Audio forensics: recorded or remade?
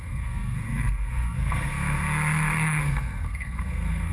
remade